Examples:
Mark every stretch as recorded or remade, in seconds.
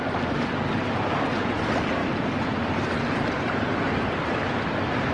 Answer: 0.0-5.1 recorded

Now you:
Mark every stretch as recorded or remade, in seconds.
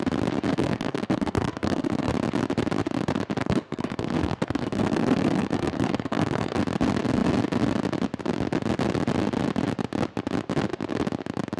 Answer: 0.0-0.5 recorded; 0.5-2.1 remade; 2.1-3.4 recorded; 3.4-6.6 remade; 6.6-11.6 recorded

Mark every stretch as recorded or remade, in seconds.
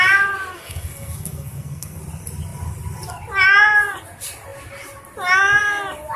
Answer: 0.0-0.5 recorded; 0.5-2.0 remade; 2.0-6.2 recorded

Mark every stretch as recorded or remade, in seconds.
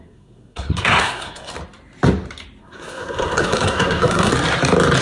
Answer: 0.0-1.5 remade; 1.5-2.6 recorded; 2.6-4.3 remade; 4.3-5.0 recorded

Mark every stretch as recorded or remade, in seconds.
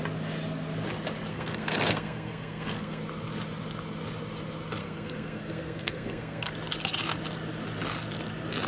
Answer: 0.0-1.3 recorded; 1.3-3.0 remade; 3.0-4.8 recorded; 4.8-6.5 remade; 6.5-8.7 recorded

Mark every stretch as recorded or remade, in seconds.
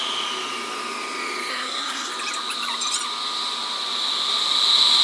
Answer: 0.0-1.5 recorded; 1.5-2.1 remade; 2.1-5.0 recorded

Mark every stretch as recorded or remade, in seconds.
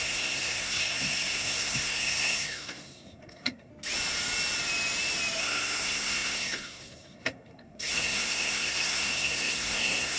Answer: 0.0-3.7 remade; 3.7-5.4 recorded; 5.4-10.2 remade